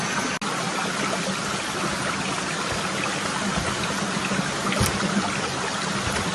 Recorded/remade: recorded